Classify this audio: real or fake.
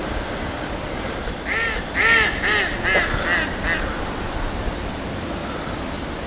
real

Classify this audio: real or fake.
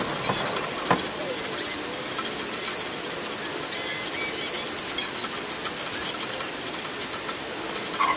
real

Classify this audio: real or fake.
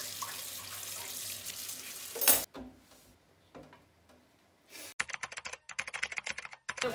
real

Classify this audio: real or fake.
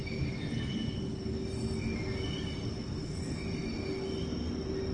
real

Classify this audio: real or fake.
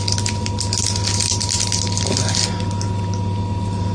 real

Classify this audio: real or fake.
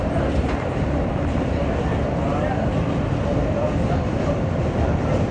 real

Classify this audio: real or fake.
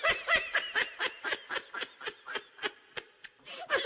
real